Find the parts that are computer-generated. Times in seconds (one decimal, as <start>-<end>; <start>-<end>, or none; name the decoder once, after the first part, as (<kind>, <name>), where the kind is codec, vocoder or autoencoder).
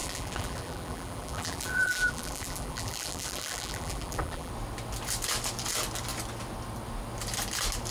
0.0-4.5 (vocoder, BigVGAN v2)